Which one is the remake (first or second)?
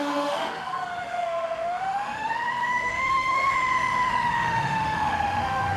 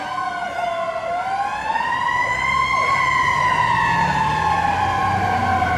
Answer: first